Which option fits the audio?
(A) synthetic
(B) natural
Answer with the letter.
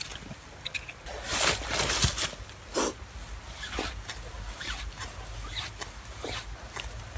B